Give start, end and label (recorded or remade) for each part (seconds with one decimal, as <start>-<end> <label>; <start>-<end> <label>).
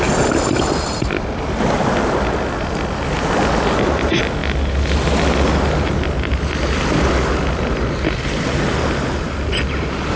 0.0-10.2 recorded